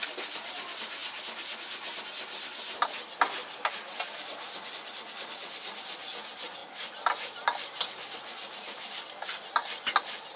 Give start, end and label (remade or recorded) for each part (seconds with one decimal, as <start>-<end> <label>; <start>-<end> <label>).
0.0-10.4 recorded